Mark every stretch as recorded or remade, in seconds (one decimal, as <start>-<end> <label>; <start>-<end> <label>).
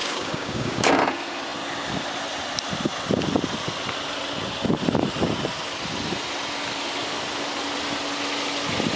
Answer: 0.0-0.9 remade; 0.9-9.0 recorded